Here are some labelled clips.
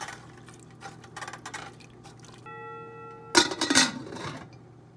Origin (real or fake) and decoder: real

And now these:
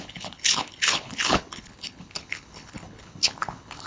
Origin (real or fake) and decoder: fake, codec, HILCodec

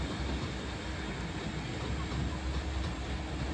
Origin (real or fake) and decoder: real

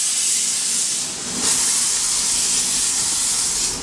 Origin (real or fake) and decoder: real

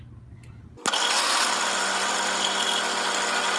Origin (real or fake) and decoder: real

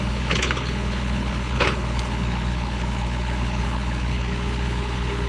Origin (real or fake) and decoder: fake, codec, HILCodec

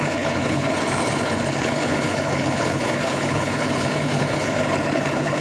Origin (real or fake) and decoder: fake, codec, HILCodec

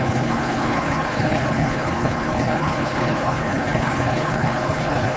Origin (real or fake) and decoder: fake, codec, HILCodec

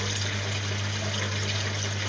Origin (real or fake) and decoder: real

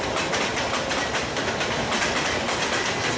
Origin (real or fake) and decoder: real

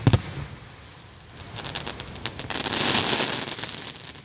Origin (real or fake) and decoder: real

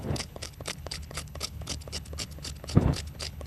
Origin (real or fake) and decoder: fake, codec, HILCodec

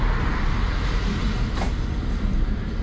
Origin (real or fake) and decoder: real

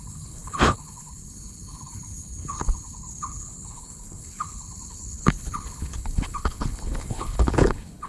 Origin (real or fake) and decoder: fake, codec, HILCodec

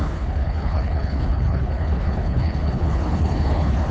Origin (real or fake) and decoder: fake, codec, HILCodec